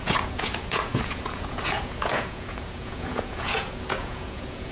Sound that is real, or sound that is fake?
fake